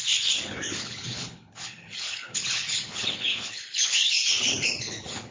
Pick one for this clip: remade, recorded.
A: remade